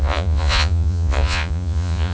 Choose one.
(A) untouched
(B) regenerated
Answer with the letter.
B